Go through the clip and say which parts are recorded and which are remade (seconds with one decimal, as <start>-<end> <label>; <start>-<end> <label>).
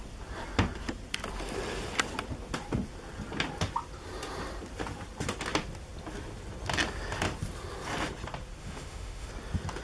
0.0-8.6 recorded; 8.6-9.3 remade; 9.3-9.8 recorded